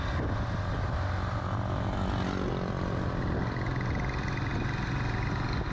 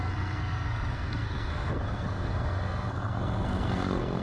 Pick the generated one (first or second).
second